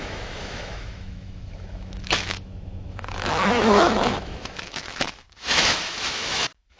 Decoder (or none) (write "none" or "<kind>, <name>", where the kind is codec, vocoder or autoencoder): autoencoder, DAC-VAE